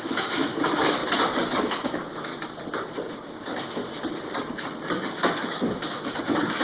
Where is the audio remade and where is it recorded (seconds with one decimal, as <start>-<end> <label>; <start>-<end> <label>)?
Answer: 0.0-1.0 remade; 1.0-1.6 recorded; 1.6-2.3 remade; 2.3-3.1 recorded; 3.1-3.8 remade; 3.8-5.1 recorded; 5.1-6.6 remade

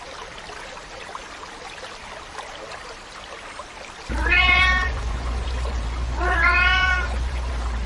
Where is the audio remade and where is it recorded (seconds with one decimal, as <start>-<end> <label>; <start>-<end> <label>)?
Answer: 0.0-4.2 recorded; 4.2-7.5 remade; 7.5-7.9 recorded